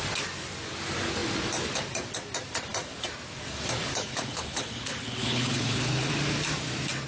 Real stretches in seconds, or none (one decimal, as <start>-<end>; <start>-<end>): 0.0-3.9; 6.1-7.1